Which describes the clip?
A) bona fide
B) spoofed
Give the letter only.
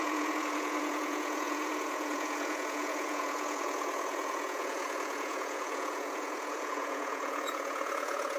B